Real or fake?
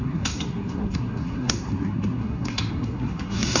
fake